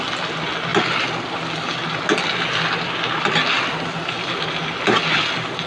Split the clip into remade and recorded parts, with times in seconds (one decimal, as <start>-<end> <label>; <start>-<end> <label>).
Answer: 0.0-5.7 recorded